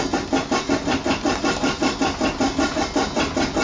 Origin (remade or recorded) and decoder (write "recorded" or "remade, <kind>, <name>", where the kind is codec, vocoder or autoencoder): recorded